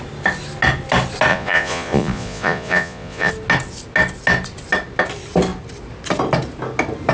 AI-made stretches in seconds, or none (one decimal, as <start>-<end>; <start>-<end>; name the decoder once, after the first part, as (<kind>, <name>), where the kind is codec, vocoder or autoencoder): 1.3-3.3 (vocoder, Vocos)